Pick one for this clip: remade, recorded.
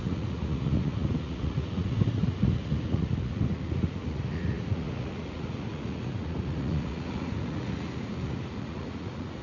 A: remade